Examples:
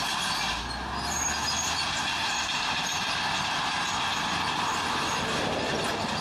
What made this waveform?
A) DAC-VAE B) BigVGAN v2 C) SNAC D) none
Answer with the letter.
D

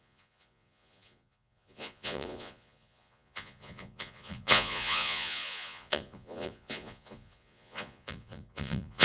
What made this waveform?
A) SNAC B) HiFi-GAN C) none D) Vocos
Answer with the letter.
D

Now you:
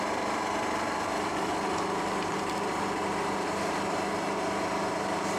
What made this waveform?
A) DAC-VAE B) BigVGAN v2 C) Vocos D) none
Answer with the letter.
D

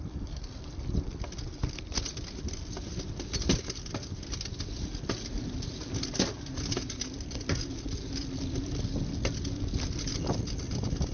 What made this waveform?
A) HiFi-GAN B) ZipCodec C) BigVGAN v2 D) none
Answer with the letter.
D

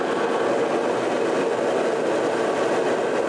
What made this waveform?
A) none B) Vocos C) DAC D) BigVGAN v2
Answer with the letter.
A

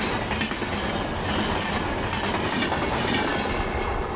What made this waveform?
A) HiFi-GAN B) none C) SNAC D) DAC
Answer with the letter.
B